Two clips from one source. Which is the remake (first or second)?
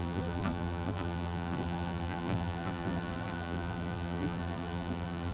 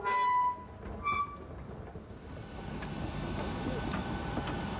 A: first